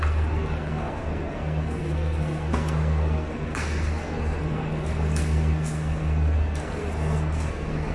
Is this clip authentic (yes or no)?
no